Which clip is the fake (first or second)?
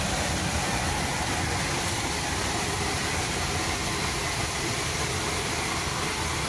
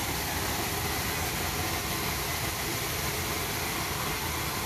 first